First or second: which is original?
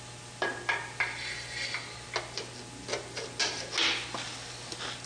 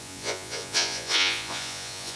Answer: first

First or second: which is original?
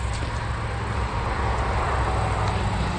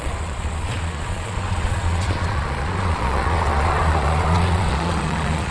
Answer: first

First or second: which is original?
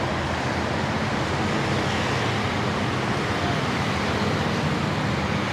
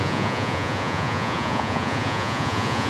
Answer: first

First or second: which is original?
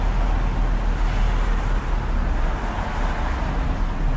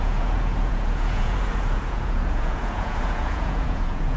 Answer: first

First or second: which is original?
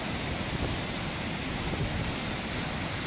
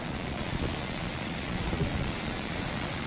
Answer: first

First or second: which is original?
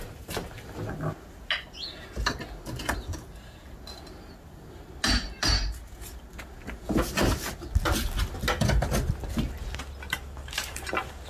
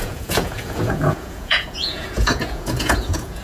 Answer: first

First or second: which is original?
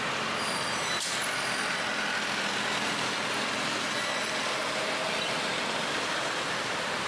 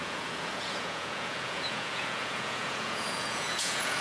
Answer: first